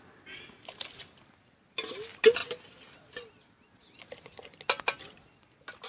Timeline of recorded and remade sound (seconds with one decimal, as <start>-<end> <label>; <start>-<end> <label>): 0.0-5.9 recorded